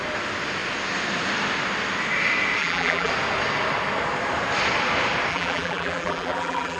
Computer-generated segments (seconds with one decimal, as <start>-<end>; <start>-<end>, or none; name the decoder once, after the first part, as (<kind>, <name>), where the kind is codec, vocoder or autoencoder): 2.6-3.1 (vocoder, BigVGAN v2); 5.3-6.8